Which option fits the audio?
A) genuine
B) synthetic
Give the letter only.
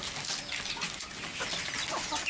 A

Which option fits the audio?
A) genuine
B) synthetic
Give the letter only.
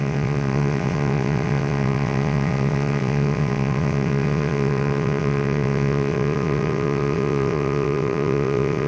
B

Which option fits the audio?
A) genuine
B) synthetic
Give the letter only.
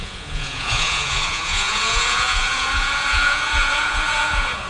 B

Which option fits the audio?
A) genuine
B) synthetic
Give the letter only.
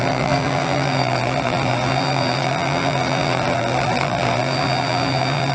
B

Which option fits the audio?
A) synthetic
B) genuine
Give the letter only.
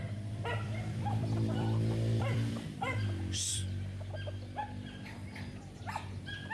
A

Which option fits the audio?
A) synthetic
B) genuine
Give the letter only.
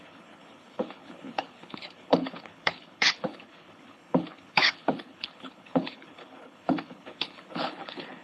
A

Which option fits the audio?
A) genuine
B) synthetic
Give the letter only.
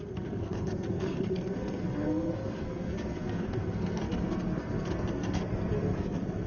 B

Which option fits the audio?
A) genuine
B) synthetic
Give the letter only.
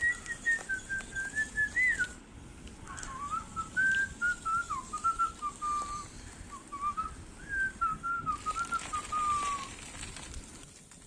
A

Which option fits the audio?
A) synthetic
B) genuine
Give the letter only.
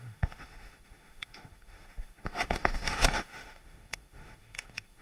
A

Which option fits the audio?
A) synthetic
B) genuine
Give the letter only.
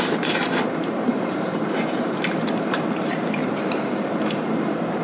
A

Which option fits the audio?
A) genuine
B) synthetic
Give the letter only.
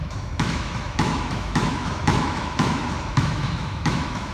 B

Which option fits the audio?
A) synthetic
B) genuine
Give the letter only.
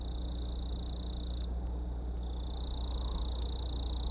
B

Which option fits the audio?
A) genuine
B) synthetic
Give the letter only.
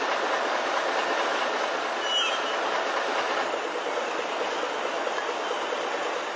A